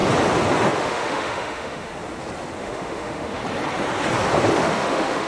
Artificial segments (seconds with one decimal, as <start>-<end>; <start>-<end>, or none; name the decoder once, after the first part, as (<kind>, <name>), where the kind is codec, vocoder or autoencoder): 0.7-1.9 (autoencoder, DAC-VAE); 2.6-3.4; 4.5-5.3